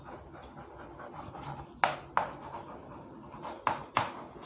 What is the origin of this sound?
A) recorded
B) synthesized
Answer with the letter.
A